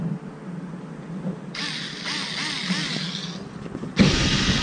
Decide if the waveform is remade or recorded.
recorded